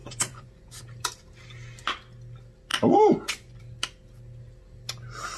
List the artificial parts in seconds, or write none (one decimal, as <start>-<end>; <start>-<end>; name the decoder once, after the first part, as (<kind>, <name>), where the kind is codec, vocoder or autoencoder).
0.0-0.8 (vocoder, Vocos); 2.7-3.6